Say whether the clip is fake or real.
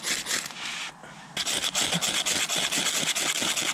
real